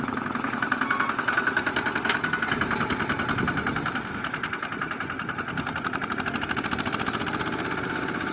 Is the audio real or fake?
real